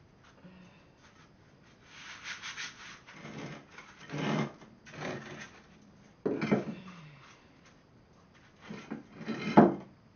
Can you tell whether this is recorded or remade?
recorded